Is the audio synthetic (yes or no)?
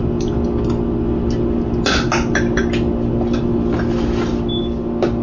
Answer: no